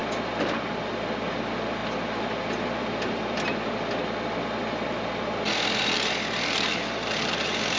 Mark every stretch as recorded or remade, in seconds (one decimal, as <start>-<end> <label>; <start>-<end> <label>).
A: 0.0-7.8 recorded